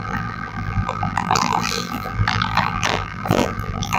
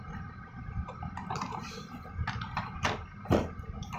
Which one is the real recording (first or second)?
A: second